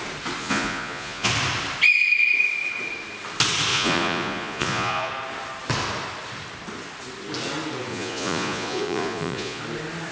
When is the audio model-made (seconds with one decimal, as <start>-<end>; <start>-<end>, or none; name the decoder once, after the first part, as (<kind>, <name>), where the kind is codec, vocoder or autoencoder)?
0.4-1.3 (vocoder, Vocos); 3.7-5.1; 7.9-9.6